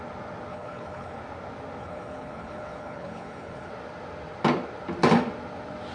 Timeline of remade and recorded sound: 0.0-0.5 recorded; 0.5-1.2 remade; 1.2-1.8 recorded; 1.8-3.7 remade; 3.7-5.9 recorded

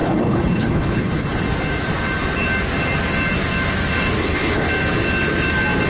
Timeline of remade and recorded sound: 0.0-1.4 remade; 1.4-4.2 recorded; 4.2-4.7 remade; 4.7-5.9 recorded

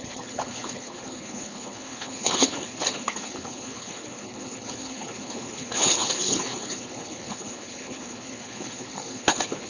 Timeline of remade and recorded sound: 0.0-9.7 remade